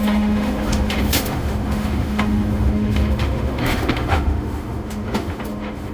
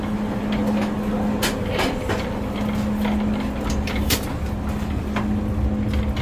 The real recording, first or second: second